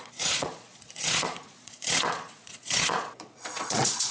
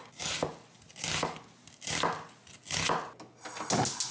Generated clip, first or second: first